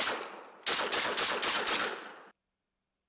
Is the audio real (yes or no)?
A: yes